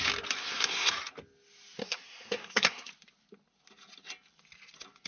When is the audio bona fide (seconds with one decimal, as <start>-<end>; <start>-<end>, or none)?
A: 0.0-0.4; 0.9-1.8; 2.9-5.1

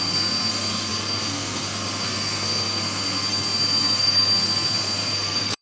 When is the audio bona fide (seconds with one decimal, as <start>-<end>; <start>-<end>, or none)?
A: none

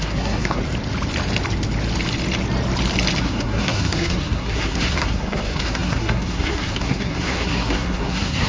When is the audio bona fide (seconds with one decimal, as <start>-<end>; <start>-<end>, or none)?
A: 0.6-3.2

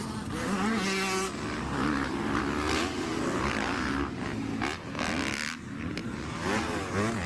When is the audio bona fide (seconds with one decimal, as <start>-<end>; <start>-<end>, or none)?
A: 0.0-7.3

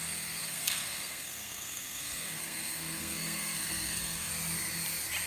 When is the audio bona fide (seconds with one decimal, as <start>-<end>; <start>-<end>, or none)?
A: 4.3-5.3

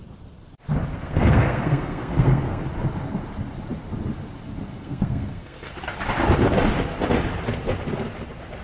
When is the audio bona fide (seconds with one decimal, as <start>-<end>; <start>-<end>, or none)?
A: 0.0-0.9; 2.6-4.7; 5.7-8.6